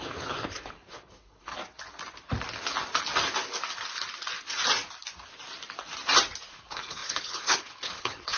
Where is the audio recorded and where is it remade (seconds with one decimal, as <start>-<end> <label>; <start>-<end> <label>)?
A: 0.0-1.5 remade; 1.5-6.5 recorded; 6.5-8.4 remade